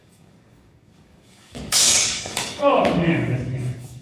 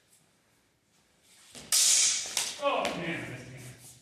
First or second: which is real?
second